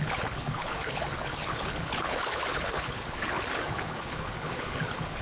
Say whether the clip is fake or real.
fake